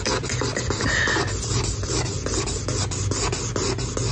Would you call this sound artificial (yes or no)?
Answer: no